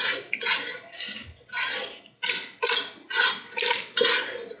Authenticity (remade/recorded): recorded